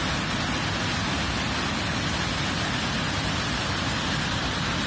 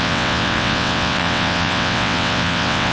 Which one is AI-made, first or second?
second